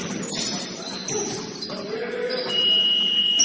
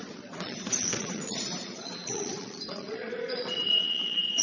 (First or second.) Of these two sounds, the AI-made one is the second